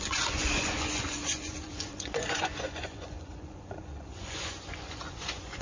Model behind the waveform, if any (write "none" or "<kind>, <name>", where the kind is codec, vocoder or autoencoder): vocoder, Vocos